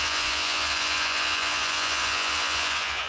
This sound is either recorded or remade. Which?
remade